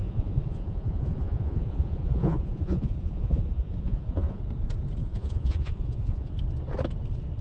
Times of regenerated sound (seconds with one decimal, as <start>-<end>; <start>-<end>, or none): 0.0-4.4; 5.0-6.3